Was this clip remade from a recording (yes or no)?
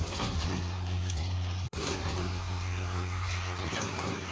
yes